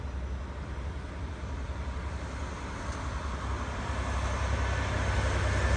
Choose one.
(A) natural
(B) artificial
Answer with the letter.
A